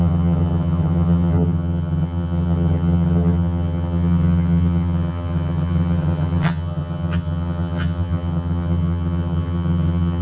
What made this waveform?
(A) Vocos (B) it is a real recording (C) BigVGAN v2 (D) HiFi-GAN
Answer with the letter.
D